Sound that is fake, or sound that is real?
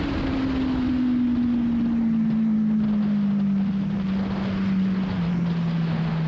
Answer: real